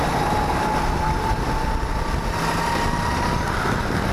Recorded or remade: recorded